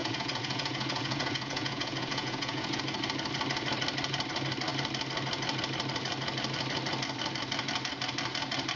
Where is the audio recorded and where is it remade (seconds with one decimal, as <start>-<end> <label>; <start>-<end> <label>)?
0.0-2.8 remade; 2.8-8.8 recorded